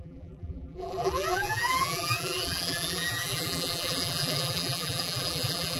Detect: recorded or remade remade